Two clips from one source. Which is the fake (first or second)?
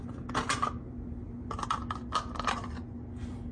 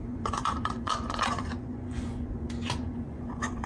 second